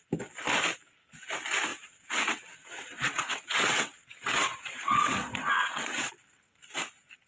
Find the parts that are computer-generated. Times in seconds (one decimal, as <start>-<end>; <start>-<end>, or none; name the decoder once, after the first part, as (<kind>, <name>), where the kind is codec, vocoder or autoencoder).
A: 1.7-6.1 (vocoder, WaveNeXt)